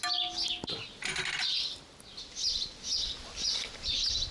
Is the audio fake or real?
real